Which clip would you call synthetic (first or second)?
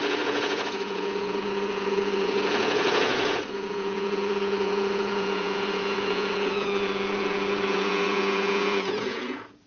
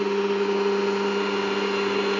first